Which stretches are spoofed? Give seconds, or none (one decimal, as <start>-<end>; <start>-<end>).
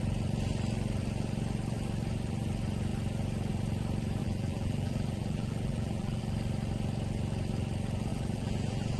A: 4.2-6.2; 8.1-9.0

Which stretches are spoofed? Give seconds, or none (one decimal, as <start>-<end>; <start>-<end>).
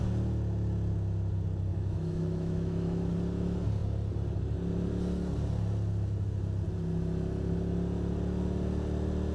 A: 1.7-3.1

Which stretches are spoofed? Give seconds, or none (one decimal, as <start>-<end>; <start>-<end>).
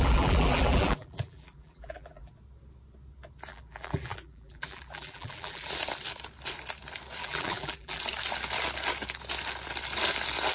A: 0.0-2.3; 3.5-5.7; 7.2-8.0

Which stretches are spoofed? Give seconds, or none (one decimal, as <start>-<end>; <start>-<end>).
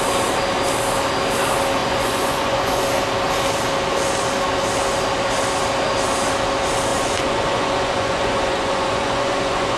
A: 1.8-2.8; 6.9-9.8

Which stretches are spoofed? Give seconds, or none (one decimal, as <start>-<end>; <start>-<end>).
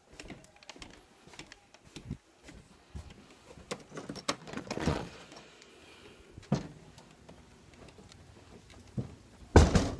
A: 4.4-5.7